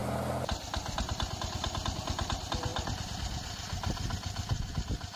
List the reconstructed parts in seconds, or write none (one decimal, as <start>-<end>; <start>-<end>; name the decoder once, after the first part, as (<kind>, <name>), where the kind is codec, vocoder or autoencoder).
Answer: 1.0-5.2 (vocoder, BigVGAN v2)